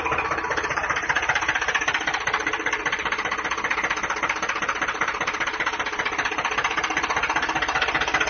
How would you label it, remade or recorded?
remade